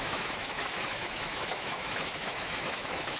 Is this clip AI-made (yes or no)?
yes